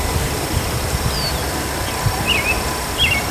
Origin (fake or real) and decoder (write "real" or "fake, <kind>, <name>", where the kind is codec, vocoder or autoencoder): real